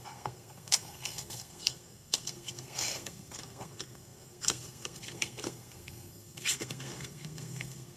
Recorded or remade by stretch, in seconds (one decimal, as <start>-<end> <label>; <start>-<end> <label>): 0.0-8.0 remade